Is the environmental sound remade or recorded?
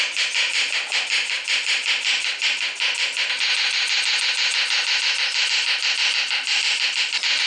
recorded